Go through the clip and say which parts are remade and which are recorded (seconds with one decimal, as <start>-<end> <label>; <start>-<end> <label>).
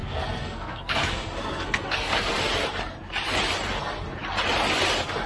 0.0-2.3 remade; 2.3-5.3 recorded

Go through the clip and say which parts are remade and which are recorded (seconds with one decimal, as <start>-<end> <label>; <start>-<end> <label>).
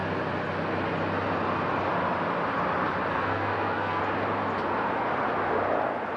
0.0-3.1 recorded; 3.1-4.0 remade; 4.0-6.2 recorded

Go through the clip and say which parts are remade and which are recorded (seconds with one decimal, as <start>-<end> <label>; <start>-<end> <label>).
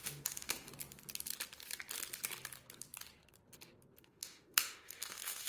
0.0-0.7 remade; 0.7-4.0 recorded; 4.0-5.5 remade